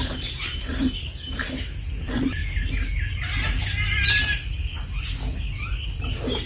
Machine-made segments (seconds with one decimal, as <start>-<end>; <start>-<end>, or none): none